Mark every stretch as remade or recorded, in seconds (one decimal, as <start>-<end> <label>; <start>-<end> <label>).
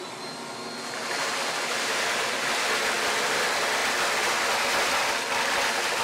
0.0-6.0 recorded